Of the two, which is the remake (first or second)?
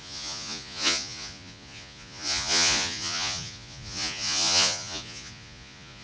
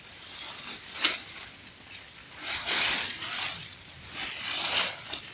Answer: first